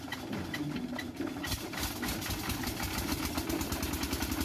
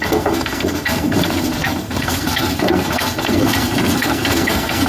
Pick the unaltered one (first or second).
first